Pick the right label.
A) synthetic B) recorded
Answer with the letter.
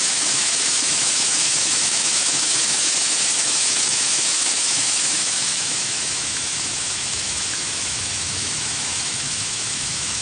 A